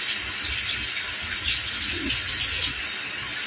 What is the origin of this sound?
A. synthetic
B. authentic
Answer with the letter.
B